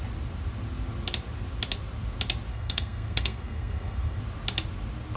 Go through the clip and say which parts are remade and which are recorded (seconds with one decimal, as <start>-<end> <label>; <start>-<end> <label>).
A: 0.0-2.5 recorded; 2.5-4.2 remade; 4.2-5.2 recorded